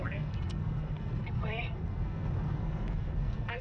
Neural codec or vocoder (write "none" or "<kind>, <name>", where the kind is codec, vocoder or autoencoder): codec, SNAC